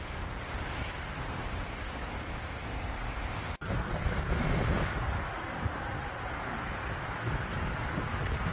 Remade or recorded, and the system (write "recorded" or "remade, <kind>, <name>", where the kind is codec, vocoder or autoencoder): recorded